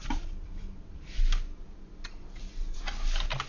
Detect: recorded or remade recorded